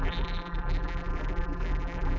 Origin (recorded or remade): remade